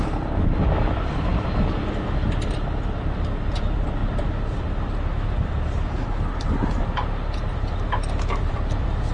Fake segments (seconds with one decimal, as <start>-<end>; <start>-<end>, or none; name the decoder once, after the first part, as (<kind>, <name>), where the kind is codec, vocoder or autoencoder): 0.0-1.3 (vocoder, BigVGAN v2); 2.4-4.0; 8.4-9.1